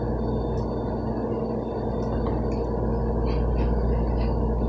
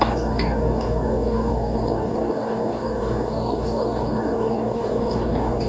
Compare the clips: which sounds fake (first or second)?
second